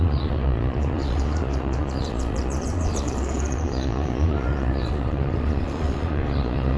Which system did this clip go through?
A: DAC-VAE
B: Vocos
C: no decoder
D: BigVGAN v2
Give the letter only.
B